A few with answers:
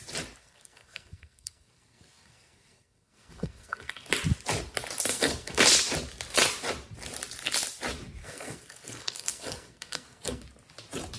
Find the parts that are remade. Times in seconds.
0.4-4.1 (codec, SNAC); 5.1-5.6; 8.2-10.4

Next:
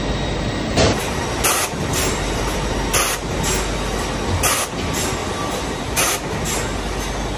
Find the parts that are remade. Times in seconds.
0.7-3.5 (vocoder, BigVGAN v2); 5.2-6.1

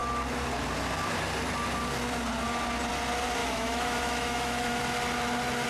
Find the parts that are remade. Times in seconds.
3.4-4.8 (autoencoder, DAC-VAE)